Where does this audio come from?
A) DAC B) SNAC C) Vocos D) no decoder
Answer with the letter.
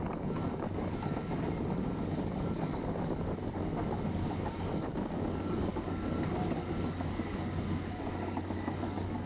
A